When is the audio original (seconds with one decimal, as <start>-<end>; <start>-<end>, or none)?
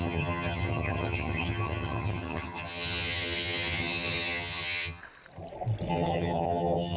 5.0-5.9